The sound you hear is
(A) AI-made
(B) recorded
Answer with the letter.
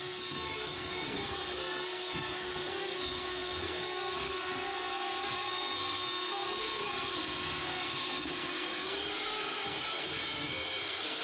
A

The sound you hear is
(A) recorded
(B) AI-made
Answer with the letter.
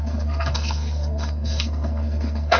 B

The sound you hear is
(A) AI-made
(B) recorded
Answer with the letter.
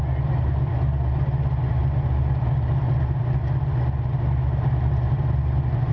B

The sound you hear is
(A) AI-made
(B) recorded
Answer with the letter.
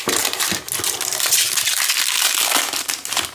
B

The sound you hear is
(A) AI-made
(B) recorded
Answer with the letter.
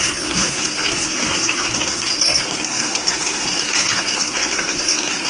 A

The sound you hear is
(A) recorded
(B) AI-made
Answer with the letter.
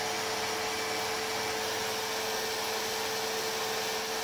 A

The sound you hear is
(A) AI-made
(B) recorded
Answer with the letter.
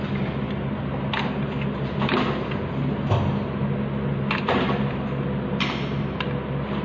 B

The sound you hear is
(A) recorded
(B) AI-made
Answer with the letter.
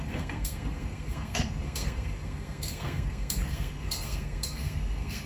B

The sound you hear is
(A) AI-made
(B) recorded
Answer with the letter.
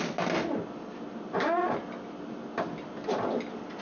B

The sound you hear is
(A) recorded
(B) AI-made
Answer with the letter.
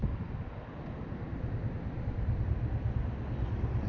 A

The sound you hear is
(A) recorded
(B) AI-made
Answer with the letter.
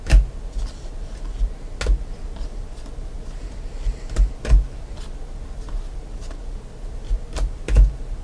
A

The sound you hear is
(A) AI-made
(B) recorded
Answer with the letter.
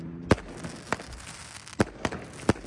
B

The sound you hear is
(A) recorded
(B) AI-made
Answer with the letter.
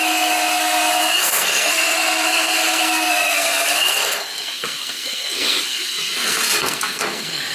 B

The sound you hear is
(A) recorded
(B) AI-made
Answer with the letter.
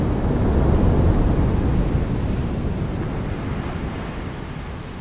A